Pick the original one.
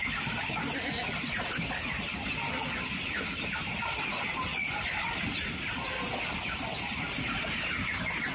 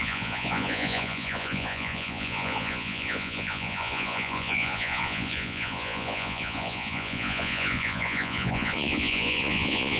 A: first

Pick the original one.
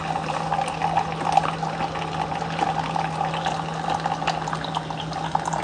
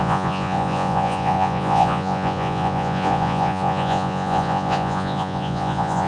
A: first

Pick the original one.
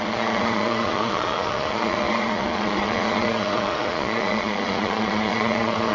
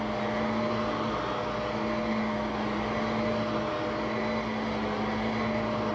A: second